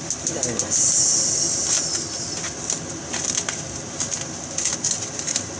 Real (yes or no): yes